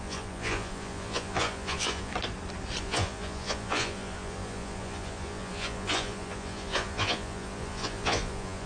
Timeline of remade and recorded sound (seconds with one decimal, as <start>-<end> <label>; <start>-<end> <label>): 0.0-2.1 remade; 2.1-2.8 recorded; 2.8-8.7 remade